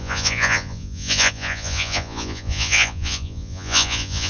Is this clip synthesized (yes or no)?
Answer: yes